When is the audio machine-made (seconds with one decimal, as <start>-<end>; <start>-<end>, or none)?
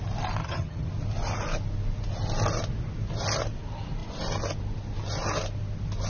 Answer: 0.4-0.9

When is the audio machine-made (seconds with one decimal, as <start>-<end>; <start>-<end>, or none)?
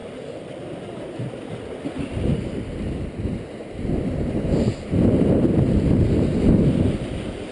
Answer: 0.8-2.3; 3.7-7.5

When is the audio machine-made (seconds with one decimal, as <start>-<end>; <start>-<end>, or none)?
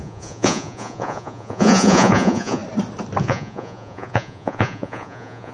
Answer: 0.0-2.6; 3.2-5.5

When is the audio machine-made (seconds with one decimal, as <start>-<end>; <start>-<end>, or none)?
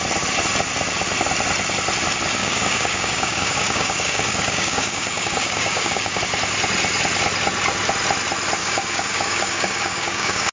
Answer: 2.4-6.2; 8.6-10.5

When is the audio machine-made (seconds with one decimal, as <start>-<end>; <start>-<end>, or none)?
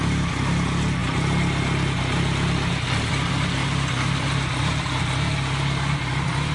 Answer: 3.6-5.0